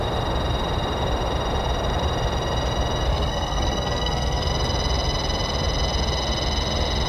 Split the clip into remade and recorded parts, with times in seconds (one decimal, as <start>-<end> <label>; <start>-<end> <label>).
0.0-3.1 recorded; 3.1-4.5 remade; 4.5-7.1 recorded